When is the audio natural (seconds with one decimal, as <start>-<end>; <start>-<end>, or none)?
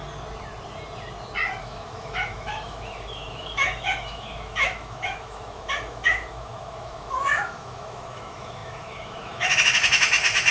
0.0-1.6